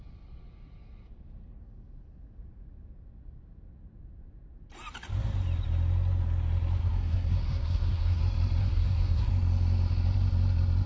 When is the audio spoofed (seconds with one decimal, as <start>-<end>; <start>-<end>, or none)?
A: 6.8-8.2; 8.6-9.3